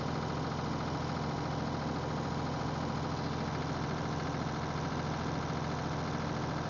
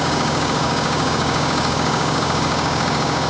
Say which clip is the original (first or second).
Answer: first